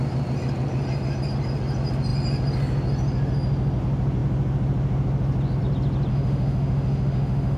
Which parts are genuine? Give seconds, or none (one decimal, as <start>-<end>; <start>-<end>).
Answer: 0.0-6.1